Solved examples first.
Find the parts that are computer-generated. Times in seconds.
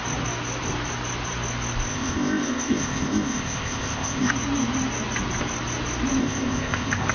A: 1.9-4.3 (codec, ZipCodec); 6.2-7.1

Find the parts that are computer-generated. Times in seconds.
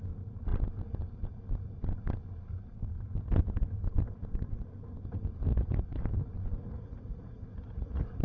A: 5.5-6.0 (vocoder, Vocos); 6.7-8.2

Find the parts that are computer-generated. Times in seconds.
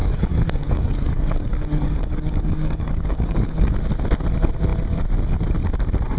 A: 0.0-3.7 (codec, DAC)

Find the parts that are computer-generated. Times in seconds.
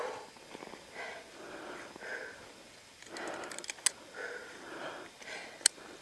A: none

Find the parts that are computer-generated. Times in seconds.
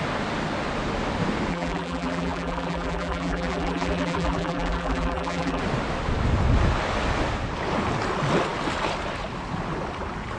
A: 1.5-5.6 (vocoder, BigVGAN v2)